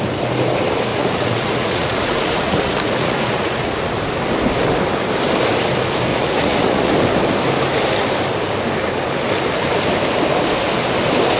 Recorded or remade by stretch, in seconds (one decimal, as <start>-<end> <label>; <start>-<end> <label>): 0.0-0.9 recorded; 0.9-3.9 remade; 3.9-6.1 recorded; 6.1-6.9 remade; 6.9-11.4 recorded